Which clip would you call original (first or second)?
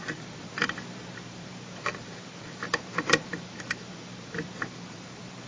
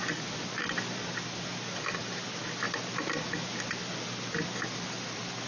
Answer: second